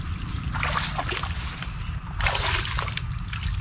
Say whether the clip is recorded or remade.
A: recorded